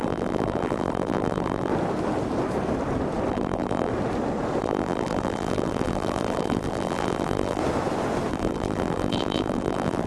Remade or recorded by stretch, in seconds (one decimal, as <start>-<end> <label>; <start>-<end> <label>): 0.0-1.7 remade; 1.7-3.3 recorded; 3.3-3.9 remade; 3.9-4.6 recorded; 4.6-7.6 remade; 7.6-8.3 recorded; 8.3-10.1 remade